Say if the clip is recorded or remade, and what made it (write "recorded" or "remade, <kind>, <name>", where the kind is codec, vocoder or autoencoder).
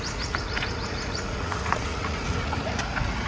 remade, vocoder, Vocos